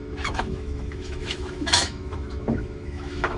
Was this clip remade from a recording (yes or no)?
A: yes